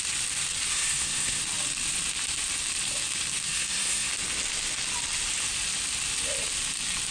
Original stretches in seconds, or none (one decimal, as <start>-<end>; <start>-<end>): 0.0-0.7; 1.4-3.5; 4.1-7.1